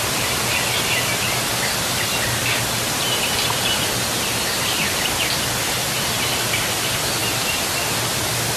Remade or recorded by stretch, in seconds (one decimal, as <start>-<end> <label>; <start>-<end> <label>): 0.0-8.6 recorded

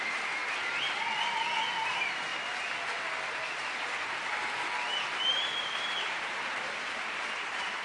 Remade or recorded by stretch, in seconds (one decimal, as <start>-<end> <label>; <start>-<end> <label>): 0.0-0.4 remade; 0.4-1.9 recorded; 1.9-2.3 remade; 2.3-4.9 recorded; 4.9-7.8 remade

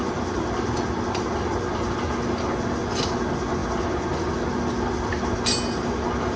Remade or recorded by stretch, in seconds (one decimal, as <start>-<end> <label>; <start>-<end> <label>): 0.0-6.4 recorded